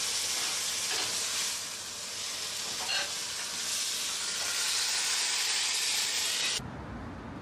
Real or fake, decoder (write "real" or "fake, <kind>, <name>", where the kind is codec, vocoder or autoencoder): real